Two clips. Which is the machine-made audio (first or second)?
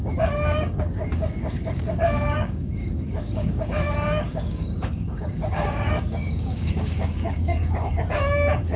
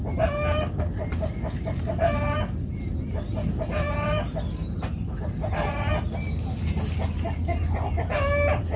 first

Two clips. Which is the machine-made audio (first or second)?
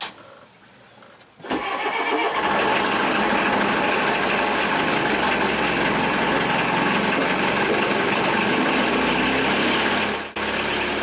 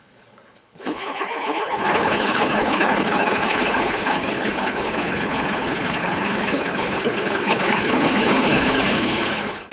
second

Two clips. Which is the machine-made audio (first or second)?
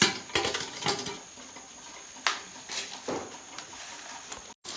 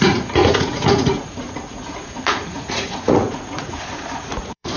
second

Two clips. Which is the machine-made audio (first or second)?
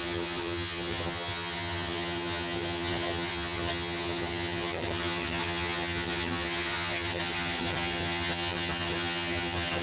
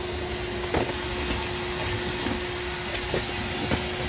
first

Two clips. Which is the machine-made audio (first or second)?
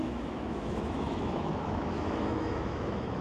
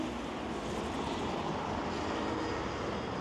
first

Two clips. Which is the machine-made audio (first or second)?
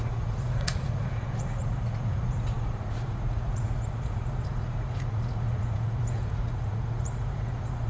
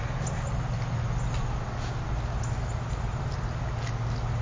first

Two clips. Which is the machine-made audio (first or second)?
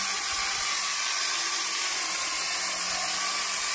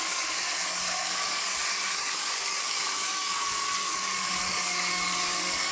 second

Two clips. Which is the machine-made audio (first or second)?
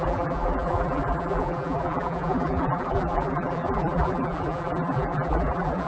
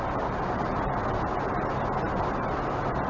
first